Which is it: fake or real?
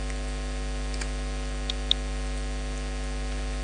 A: real